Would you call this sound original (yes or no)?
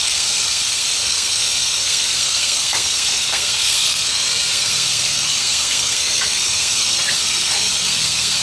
no